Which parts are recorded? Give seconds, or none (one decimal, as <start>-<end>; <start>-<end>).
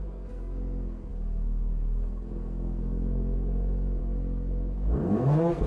none